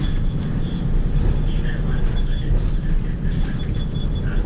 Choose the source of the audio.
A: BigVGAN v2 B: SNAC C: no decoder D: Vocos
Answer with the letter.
C